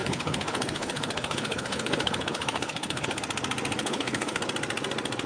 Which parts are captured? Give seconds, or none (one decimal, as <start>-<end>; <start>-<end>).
3.2-3.8; 4.4-5.3

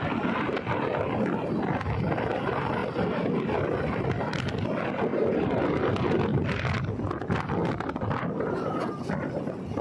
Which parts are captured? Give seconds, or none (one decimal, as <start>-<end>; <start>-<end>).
0.0-5.1; 5.6-7.6; 8.7-9.8

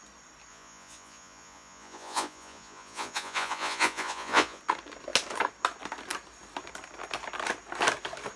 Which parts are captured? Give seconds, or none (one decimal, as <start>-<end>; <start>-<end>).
0.0-0.5; 4.6-8.4

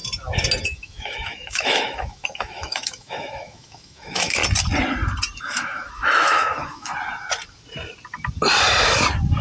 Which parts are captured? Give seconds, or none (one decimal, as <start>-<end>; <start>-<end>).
0.0-0.6; 4.4-5.4; 6.9-9.4